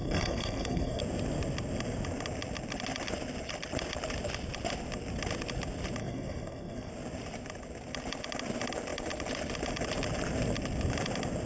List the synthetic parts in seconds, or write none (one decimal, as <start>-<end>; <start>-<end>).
0.0-1.0; 6.0-6.9